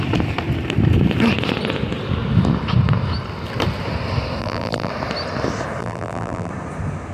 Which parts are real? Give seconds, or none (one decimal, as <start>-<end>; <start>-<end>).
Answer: 0.0-4.4; 4.9-5.8; 6.5-7.1